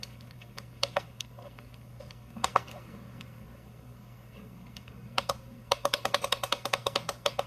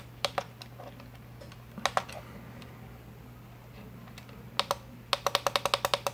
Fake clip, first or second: first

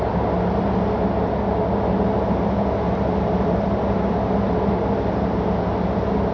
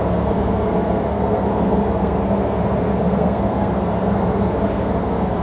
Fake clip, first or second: second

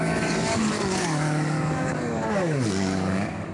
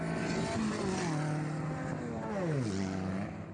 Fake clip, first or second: first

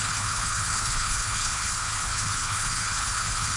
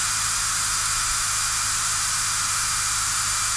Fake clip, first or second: first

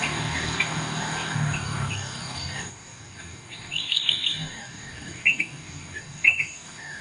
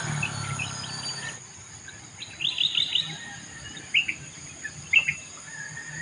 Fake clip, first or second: first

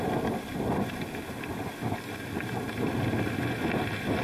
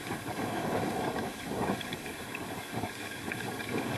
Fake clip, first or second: second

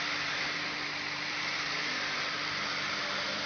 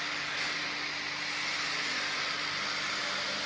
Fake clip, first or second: first